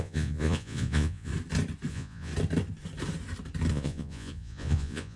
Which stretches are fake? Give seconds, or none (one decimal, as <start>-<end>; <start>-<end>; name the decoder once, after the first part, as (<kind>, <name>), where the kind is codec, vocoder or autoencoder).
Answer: 0.0-1.3 (vocoder, Vocos); 1.9-2.3; 3.7-5.2